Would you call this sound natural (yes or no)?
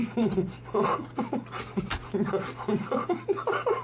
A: yes